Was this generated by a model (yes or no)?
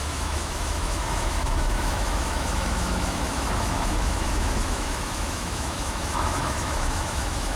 yes